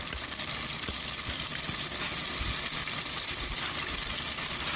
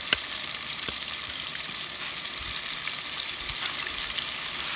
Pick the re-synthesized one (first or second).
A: second